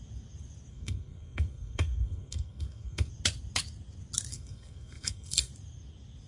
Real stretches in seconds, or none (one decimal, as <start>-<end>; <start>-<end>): 0.0-0.7; 3.1-4.3; 5.5-6.3